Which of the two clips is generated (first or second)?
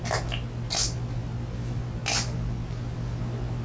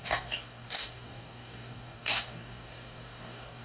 second